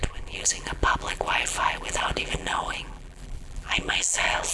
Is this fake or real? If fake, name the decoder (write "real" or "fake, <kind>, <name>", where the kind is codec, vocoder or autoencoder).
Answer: fake, vocoder, BigVGAN v2